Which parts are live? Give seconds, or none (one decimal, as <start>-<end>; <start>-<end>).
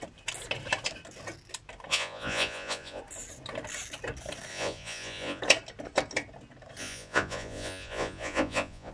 0.0-1.9; 3.0-4.5; 5.4-6.8